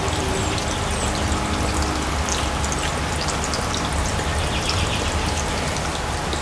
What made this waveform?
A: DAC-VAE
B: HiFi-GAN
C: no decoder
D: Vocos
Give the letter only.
C